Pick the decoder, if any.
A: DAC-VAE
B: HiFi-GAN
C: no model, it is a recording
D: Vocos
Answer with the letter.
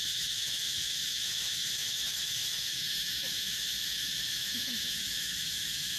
A